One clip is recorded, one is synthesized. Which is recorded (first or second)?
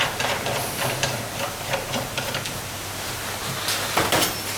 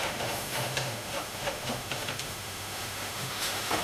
first